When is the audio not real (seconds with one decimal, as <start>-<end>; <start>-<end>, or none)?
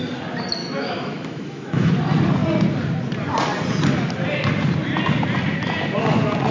0.6-1.9